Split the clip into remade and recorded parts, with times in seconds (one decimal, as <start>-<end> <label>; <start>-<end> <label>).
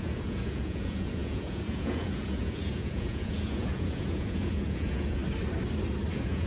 0.0-5.2 remade; 5.2-6.1 recorded; 6.1-6.5 remade